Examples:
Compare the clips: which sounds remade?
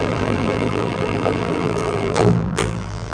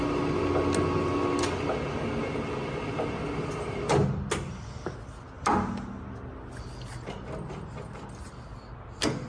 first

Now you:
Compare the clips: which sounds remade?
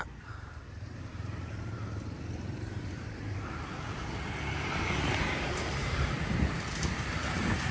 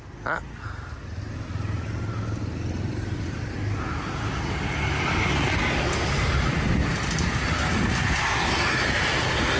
first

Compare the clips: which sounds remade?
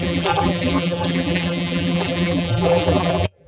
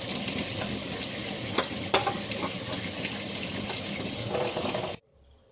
first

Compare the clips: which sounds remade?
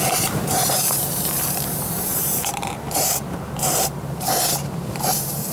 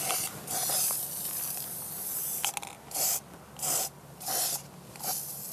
first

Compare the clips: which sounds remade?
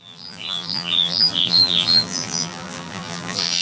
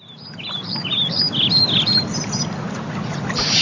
first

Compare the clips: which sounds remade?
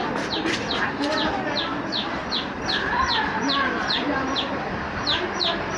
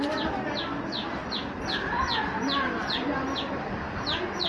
first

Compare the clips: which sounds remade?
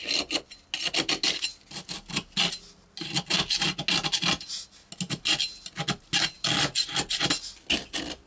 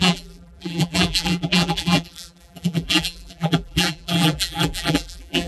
second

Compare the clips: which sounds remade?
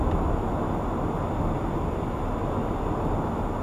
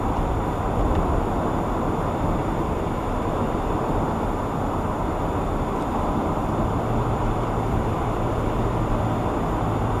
second